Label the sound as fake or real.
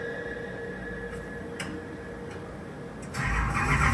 real